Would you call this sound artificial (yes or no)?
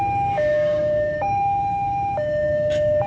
yes